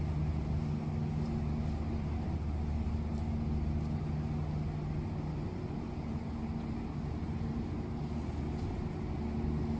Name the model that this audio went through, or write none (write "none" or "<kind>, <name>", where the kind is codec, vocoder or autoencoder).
none